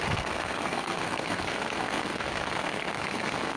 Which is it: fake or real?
fake